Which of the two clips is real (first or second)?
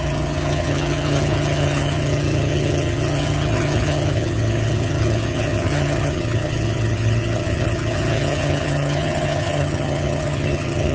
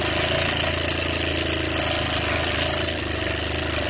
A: second